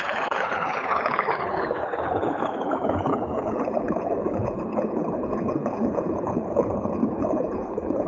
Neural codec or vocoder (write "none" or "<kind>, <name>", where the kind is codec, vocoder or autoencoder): codec, HILCodec